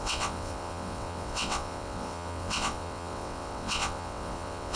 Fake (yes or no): yes